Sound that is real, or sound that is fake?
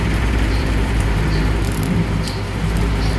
fake